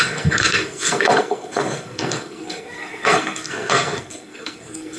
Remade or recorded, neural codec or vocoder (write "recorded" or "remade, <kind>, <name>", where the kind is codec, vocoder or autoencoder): remade, codec, SNAC